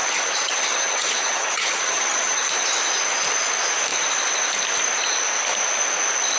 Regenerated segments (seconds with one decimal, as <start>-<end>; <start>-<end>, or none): 0.0-2.5